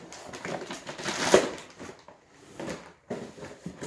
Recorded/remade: recorded